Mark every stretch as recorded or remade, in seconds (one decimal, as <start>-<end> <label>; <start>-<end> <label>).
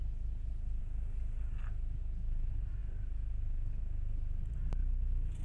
0.0-5.4 recorded